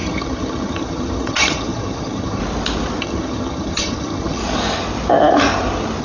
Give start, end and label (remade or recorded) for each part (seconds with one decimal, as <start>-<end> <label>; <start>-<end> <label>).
0.0-2.4 remade; 2.4-3.0 recorded; 3.0-4.4 remade; 4.4-6.0 recorded

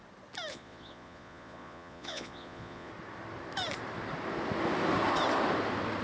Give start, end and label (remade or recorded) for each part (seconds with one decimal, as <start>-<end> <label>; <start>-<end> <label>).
0.0-0.5 recorded; 0.5-2.9 remade; 2.9-6.0 recorded

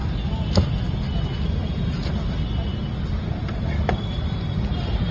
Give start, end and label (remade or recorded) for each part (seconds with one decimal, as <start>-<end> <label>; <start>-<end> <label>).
0.0-5.1 recorded

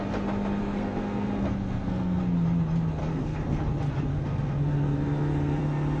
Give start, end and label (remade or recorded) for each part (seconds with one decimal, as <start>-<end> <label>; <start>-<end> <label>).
0.0-0.6 recorded; 0.6-2.2 remade; 2.2-3.0 recorded; 3.0-3.6 remade; 3.6-4.1 recorded; 4.1-5.6 remade; 5.6-6.0 recorded

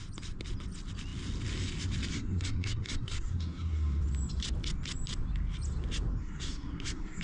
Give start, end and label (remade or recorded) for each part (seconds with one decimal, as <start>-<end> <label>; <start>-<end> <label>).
0.0-2.1 recorded; 2.1-4.0 remade; 4.0-6.2 recorded; 6.2-7.2 remade

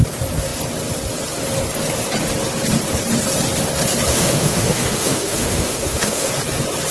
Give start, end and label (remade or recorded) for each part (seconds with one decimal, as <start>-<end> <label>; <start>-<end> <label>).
0.0-4.1 recorded; 4.1-6.3 remade; 6.3-6.9 recorded

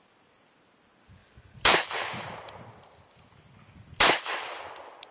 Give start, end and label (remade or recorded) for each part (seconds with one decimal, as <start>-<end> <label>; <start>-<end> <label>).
0.0-1.2 recorded; 1.2-4.3 remade; 4.3-5.1 recorded

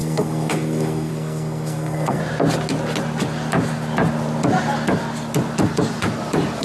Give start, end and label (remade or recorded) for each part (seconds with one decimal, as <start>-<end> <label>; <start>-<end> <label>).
0.0-2.2 remade; 2.2-6.6 recorded